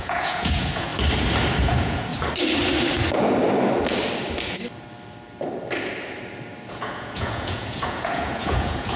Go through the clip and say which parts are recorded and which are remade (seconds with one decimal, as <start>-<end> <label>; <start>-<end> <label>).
0.0-0.9 remade; 0.9-1.6 recorded; 1.6-2.1 remade; 2.1-6.7 recorded; 6.7-9.0 remade